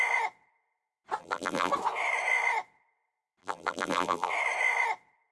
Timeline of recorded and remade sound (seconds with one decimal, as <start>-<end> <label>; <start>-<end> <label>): 0.0-1.2 recorded; 1.2-1.7 remade; 1.7-3.4 recorded; 3.4-4.3 remade; 4.3-5.3 recorded